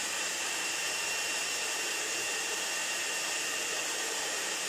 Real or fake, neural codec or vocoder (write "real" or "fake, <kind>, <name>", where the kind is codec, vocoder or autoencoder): fake, vocoder, BigVGAN v2